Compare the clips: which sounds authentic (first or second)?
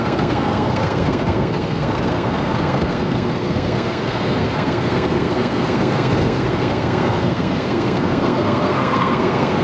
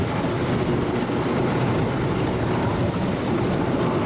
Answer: second